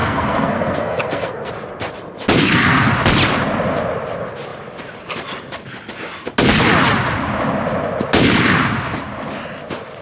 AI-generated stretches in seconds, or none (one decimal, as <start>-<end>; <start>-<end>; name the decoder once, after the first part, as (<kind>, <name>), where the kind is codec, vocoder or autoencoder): 0.0-1.5 (codec, SNAC); 2.4-2.9

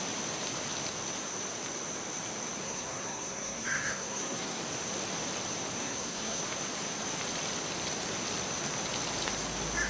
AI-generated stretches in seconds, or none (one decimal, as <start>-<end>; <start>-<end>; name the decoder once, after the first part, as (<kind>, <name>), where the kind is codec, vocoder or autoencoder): 2.6-4.6 (codec, SNAC); 5.8-6.4

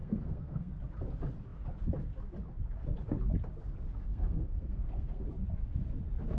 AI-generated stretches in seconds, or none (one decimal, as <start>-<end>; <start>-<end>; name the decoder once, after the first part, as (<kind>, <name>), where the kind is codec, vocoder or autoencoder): 0.0-0.8 (codec, SNAC); 4.1-5.2

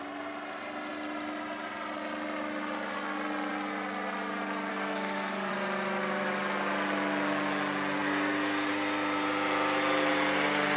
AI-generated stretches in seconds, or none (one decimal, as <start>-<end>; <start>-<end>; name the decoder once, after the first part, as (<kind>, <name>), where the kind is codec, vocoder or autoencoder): 4.7-5.5 (codec, SNAC)

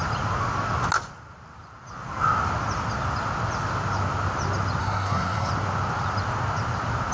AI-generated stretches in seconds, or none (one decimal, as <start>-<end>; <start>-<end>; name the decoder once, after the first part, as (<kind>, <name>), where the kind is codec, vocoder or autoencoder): 4.8-5.5 (codec, SNAC)

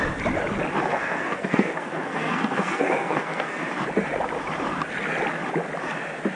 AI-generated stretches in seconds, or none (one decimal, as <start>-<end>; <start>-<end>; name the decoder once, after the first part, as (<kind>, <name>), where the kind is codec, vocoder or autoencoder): 0.9-3.6 (codec, SNAC)